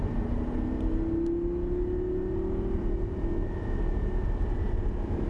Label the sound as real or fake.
real